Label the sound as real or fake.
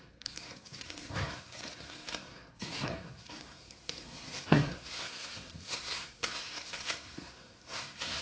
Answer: fake